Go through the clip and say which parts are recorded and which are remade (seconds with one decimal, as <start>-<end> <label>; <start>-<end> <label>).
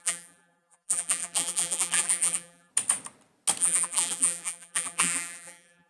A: 0.0-2.7 remade; 2.7-3.6 recorded; 3.6-5.9 remade